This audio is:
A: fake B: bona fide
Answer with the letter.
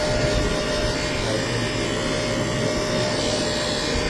B